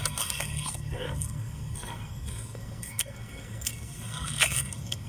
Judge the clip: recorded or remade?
remade